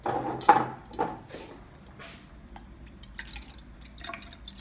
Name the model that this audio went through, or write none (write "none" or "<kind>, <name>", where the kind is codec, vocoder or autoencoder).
none